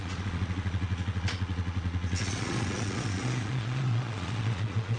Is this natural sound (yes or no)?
no